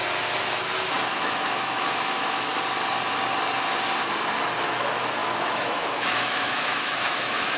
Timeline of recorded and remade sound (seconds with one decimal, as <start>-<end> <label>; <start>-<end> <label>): 0.0-1.1 recorded; 1.1-2.5 remade; 2.5-4.6 recorded; 4.6-7.6 remade